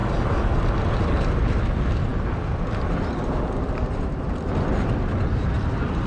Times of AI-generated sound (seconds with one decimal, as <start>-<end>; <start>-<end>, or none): none